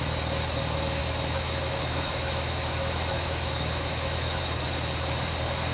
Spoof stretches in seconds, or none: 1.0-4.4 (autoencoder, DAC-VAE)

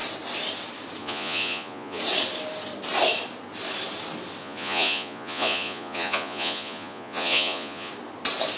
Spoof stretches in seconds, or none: 1.0-2.0 (vocoder, Vocos); 4.4-7.9

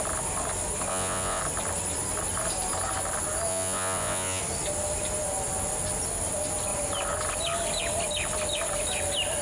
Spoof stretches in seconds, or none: 0.9-1.4 (vocoder, Vocos); 3.5-4.4

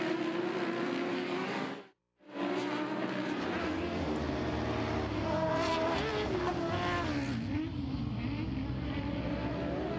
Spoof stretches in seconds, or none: 1.1-2.0 (codec, DAC)

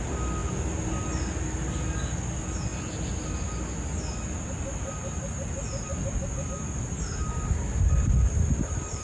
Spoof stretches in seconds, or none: none